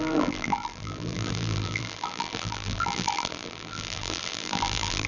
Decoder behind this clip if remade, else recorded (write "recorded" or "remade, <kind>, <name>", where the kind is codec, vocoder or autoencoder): remade, vocoder, BigVGAN v2